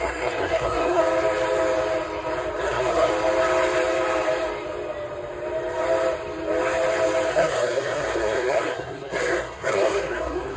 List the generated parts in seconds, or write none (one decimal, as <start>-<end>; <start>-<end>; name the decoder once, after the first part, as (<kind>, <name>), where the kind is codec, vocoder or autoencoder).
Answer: 0.0-1.0 (codec, SNAC); 2.6-3.1; 7.3-10.6